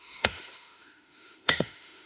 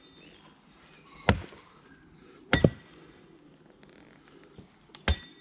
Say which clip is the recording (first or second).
second